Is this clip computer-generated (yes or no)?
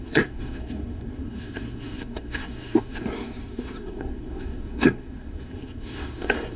yes